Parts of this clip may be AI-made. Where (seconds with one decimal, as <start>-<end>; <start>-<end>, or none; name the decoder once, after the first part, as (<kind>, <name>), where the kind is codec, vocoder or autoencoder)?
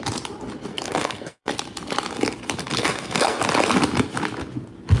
0.7-1.5 (codec, SNAC); 2.8-3.4